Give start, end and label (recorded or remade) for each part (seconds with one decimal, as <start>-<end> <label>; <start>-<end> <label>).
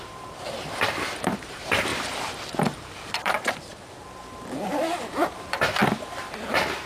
0.0-1.9 remade; 1.9-2.6 recorded; 2.6-3.7 remade; 3.7-4.7 recorded; 4.7-5.8 remade; 5.8-6.5 recorded; 6.5-6.9 remade